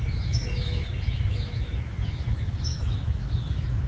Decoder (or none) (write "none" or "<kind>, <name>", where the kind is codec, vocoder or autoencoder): autoencoder, DAC-VAE